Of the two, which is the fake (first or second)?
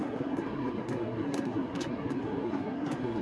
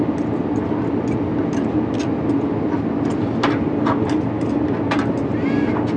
first